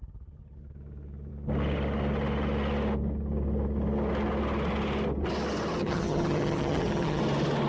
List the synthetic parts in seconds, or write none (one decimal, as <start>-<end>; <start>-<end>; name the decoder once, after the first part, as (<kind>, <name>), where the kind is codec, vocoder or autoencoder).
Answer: 5.8-7.2 (vocoder, HiFi-GAN)